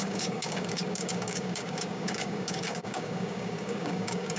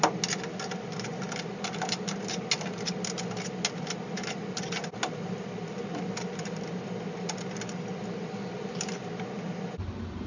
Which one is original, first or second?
second